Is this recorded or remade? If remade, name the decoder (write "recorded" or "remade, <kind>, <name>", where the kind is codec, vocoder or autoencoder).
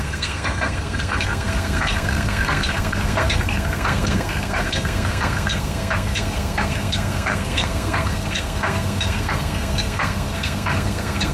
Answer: remade, codec, SNAC